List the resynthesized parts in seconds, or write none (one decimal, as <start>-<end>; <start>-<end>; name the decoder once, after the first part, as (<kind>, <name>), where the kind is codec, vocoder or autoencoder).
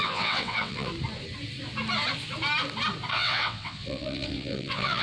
0.0-0.9 (vocoder, WaveNeXt); 3.1-5.0